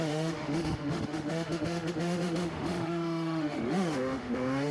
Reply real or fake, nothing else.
fake